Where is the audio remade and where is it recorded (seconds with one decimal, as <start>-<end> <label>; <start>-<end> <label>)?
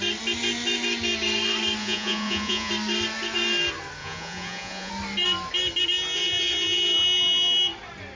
0.0-1.8 recorded; 1.8-2.7 remade; 2.7-4.0 recorded; 4.0-4.9 remade; 4.9-8.2 recorded